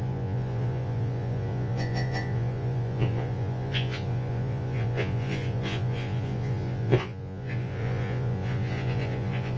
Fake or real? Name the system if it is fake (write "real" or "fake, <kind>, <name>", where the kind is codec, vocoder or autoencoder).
fake, vocoder, Vocos